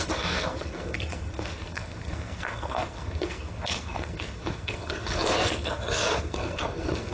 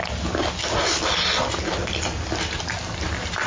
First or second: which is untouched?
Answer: second